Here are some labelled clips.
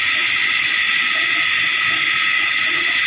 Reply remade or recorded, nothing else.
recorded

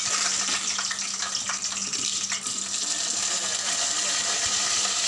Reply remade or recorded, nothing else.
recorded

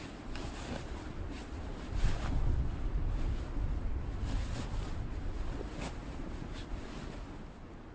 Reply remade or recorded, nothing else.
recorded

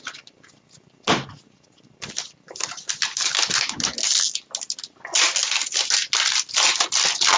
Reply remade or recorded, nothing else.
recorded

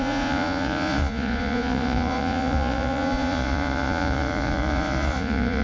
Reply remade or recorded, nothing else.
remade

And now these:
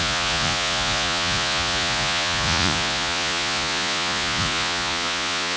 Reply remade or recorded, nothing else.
remade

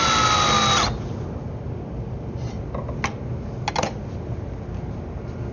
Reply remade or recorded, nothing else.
recorded